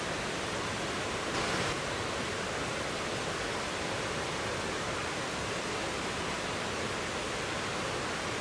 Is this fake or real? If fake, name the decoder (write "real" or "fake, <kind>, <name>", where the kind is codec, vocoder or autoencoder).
real